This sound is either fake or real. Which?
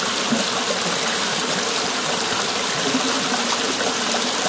real